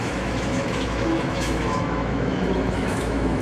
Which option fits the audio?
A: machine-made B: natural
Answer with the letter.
A